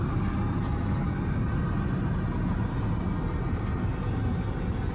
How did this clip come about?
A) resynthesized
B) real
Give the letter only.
B